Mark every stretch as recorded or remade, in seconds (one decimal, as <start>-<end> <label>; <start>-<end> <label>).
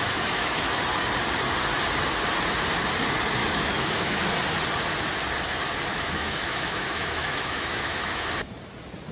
0.0-0.8 remade; 0.8-3.4 recorded; 3.4-4.2 remade; 4.2-5.9 recorded; 5.9-8.3 remade; 8.3-9.1 recorded